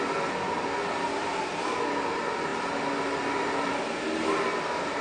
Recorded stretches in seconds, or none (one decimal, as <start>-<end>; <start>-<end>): 0.0-5.0